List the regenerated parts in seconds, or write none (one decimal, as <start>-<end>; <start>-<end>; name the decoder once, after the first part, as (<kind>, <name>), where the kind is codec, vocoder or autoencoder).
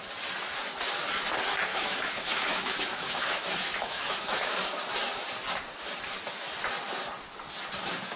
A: 1.7-4.5 (autoencoder, DAC-VAE)